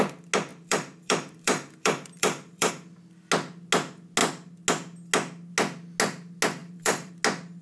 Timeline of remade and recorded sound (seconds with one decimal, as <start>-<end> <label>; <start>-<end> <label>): 0.0-0.5 recorded; 0.5-2.7 remade; 2.7-6.6 recorded; 6.6-7.1 remade; 7.1-7.6 recorded